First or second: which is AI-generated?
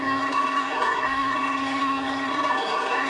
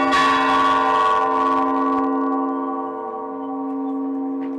first